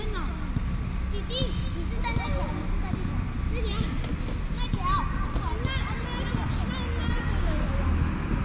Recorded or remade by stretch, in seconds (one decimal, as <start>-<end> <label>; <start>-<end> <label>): 0.0-8.4 recorded